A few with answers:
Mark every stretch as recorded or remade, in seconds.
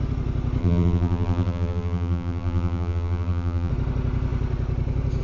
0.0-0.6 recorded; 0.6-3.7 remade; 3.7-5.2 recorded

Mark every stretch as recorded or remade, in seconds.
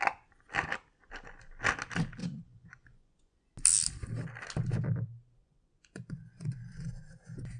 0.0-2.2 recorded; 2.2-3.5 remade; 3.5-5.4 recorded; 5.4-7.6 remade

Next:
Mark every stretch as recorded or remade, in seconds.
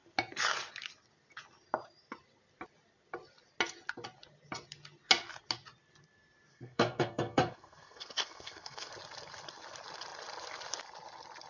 0.0-6.5 recorded; 6.5-8.9 remade; 8.9-11.5 recorded